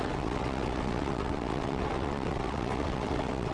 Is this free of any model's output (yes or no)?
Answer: no